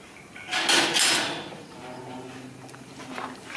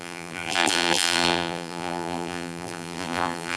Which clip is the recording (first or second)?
first